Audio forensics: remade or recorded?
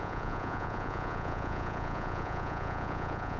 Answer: remade